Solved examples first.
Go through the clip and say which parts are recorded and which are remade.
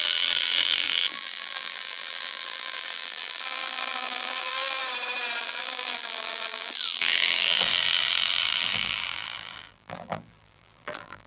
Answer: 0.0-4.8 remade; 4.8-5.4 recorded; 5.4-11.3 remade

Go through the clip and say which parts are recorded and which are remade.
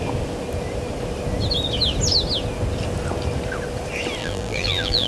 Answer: 0.0-4.2 recorded; 4.2-5.1 remade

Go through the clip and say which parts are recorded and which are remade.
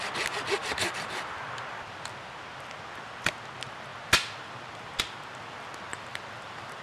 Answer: 0.0-0.6 recorded; 0.6-1.4 remade; 1.4-5.9 recorded; 5.9-6.8 remade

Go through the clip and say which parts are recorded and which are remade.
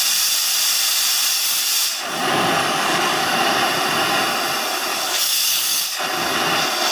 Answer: 0.0-2.6 recorded; 2.6-3.4 remade; 3.4-4.9 recorded; 4.9-6.0 remade; 6.0-6.9 recorded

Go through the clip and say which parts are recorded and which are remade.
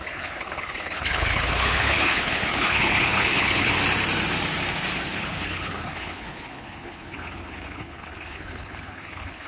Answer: 0.0-3.7 remade; 3.7-5.1 recorded; 5.1-9.5 remade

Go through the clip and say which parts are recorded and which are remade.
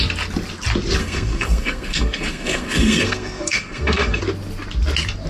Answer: 0.0-1.0 recorded; 1.0-4.2 remade; 4.2-5.3 recorded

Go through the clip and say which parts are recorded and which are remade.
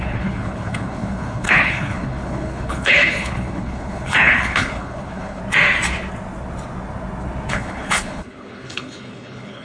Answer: 0.0-5.4 remade; 5.4-7.5 recorded; 7.5-9.6 remade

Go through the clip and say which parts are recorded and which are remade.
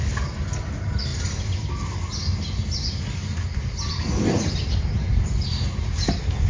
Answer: 0.0-6.5 recorded